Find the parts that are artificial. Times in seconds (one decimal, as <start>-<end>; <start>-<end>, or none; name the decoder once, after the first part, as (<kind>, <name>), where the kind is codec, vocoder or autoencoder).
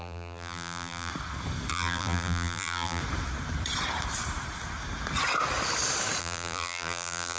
0.0-1.1 (vocoder, BigVGAN v2); 1.7-3.0; 6.2-7.4